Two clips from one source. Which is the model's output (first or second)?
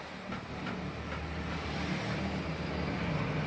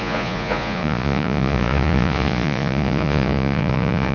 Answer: second